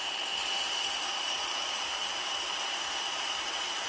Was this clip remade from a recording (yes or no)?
yes